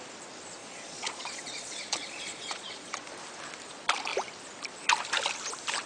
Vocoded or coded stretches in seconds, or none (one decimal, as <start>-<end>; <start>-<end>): 0.6-3.1